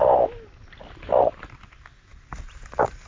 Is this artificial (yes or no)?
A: no